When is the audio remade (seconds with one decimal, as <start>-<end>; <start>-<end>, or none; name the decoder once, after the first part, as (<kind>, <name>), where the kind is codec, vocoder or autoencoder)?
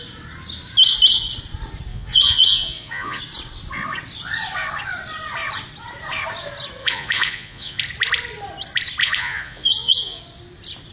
1.9-3.2 (vocoder, Vocos); 6.8-7.8; 9.0-10.2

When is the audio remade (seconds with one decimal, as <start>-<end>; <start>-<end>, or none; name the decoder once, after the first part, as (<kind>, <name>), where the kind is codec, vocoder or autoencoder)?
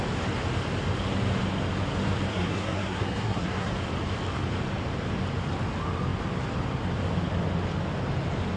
2.3-3.7 (codec, SNAC)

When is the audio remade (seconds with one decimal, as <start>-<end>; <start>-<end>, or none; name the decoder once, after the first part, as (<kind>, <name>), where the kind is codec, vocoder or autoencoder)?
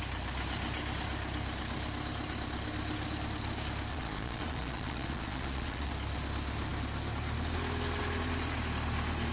3.9-5.9 (vocoder, Vocos)